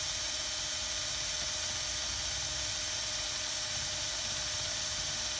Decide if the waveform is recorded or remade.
recorded